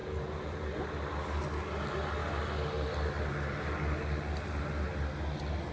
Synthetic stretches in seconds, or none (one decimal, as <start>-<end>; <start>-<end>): 0.0-0.8